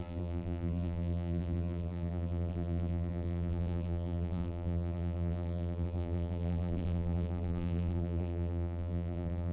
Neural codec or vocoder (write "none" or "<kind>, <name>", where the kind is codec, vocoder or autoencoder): vocoder, BigVGAN v2